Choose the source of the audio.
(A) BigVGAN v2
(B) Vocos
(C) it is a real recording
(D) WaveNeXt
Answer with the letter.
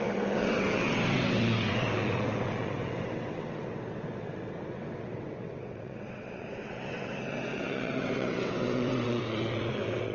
D